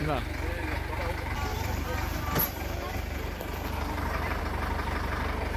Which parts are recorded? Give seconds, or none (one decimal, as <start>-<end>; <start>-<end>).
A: 0.0-1.5; 4.4-5.6